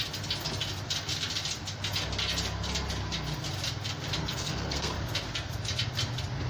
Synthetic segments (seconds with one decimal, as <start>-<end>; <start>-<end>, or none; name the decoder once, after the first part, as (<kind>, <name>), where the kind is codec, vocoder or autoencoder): 4.2-4.9 (codec, SNAC)